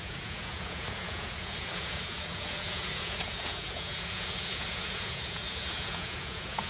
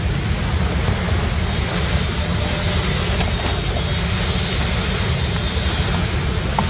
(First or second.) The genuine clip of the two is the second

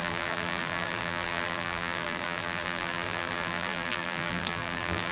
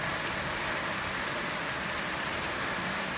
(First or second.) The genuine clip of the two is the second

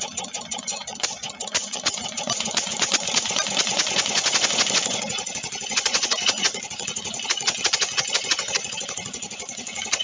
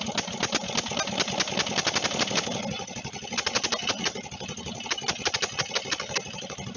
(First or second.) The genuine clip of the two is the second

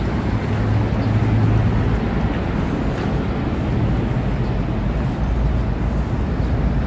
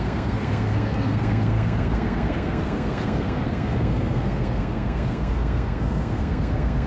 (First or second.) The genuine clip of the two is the first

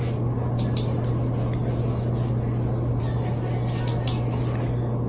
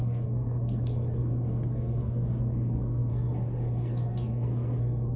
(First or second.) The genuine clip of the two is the first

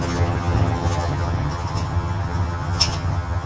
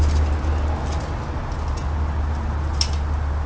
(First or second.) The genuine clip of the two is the second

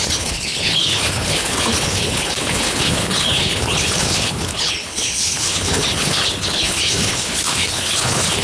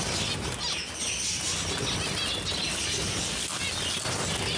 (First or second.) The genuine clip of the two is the second